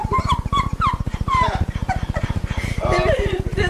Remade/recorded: remade